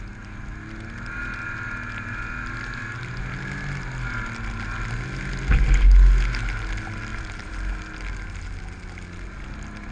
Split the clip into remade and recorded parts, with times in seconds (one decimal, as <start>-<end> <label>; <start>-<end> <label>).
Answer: 0.0-7.1 recorded; 7.1-7.7 remade; 7.7-9.9 recorded